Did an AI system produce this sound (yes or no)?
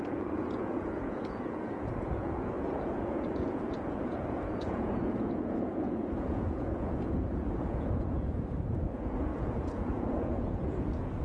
yes